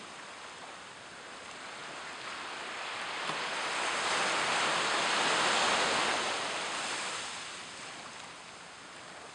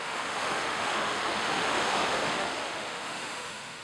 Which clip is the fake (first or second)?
second